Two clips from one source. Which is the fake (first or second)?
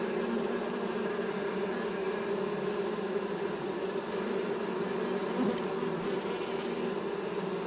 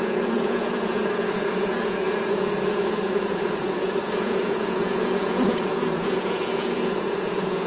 second